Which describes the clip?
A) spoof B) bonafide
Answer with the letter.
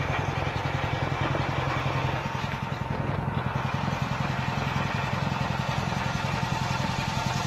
B